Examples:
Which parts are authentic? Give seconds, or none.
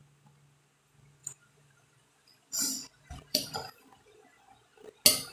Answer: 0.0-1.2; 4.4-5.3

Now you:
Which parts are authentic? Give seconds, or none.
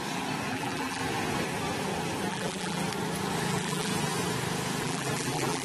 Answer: 0.0-0.5; 1.0-2.3; 2.8-3.5; 3.9-4.8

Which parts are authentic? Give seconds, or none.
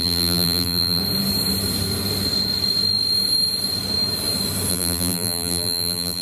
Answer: 1.0-4.7